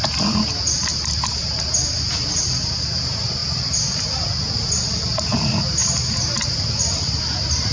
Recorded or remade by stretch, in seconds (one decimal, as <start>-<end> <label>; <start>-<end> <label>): 0.0-7.7 recorded